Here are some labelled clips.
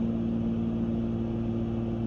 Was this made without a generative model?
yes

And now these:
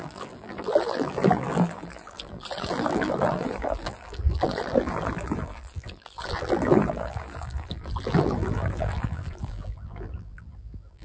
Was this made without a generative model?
no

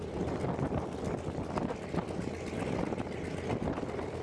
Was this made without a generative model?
no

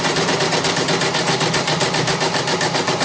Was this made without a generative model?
no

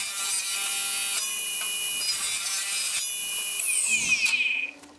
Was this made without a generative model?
yes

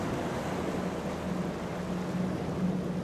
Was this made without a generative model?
yes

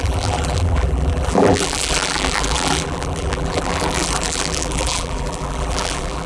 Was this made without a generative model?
no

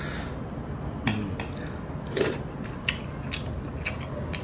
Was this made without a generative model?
yes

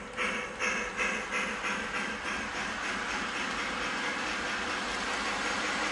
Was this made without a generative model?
yes